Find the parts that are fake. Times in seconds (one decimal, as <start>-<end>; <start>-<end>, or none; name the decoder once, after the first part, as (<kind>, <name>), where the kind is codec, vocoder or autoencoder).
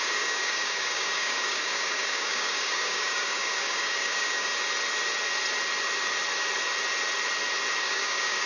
0.0-4.5 (codec, DAC); 7.8-8.5